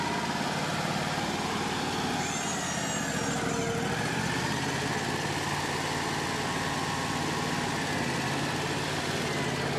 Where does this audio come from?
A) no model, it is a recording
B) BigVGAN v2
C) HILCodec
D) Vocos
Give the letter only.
A